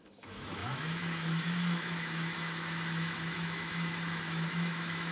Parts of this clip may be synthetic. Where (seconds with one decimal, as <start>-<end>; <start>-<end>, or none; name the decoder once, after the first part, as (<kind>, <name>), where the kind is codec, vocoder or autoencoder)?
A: 0.0-5.1 (autoencoder, DAC-VAE)